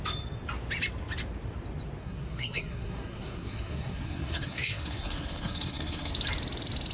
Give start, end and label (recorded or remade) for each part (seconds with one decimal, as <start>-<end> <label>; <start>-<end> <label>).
0.0-2.0 recorded; 2.0-6.1 remade; 6.1-6.9 recorded